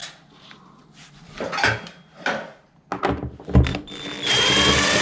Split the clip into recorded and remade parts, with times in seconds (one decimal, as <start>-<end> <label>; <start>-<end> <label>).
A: 0.0-5.0 recorded